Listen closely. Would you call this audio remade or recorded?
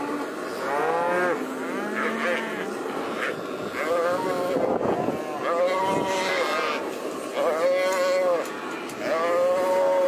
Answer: recorded